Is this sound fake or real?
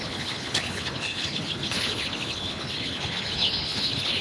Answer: fake